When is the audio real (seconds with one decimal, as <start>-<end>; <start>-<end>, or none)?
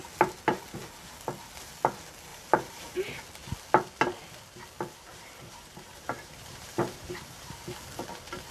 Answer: 0.0-2.3; 3.2-5.1; 7.5-8.5